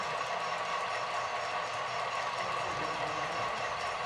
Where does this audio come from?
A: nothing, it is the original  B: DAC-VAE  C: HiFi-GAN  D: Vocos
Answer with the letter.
A